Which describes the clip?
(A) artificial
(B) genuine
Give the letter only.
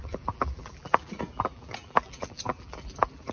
A